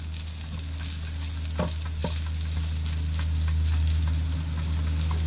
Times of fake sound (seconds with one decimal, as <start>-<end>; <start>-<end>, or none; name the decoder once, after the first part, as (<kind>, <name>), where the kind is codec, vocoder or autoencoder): none